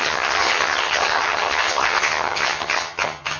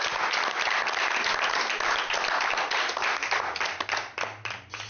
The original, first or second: second